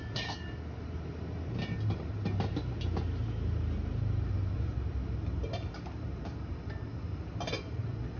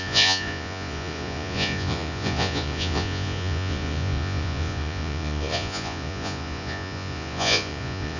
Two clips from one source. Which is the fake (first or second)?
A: second